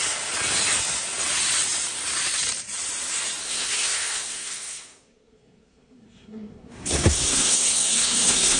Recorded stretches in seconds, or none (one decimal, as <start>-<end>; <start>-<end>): 0.0-3.4